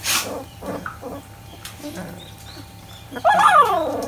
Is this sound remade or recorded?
remade